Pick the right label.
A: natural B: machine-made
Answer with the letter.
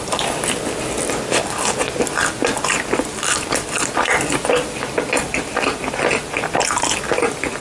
A